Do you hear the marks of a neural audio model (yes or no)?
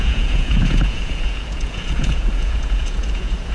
yes